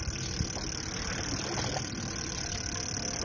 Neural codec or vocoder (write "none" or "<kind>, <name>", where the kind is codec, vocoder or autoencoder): none